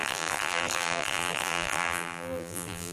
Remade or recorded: remade